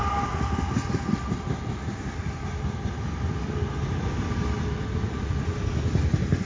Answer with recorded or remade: recorded